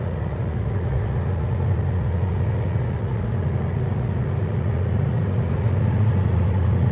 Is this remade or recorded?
remade